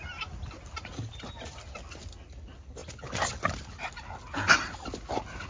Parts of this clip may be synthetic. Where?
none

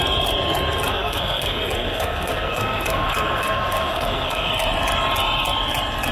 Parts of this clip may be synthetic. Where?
0.9-4.5 (codec, SNAC)